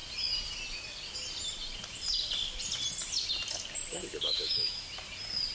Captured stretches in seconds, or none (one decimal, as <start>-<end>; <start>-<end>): 0.0-3.9; 4.9-5.5